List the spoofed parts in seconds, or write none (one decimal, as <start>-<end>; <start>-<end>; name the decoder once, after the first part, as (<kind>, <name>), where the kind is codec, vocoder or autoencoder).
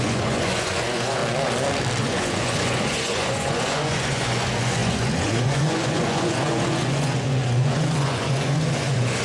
0.0-1.2 (vocoder, Vocos); 2.0-9.2